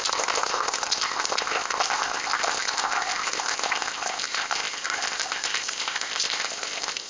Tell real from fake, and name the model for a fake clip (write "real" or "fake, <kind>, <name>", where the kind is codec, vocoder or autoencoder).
fake, codec, ZipCodec